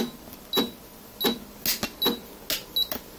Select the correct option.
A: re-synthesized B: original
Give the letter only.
B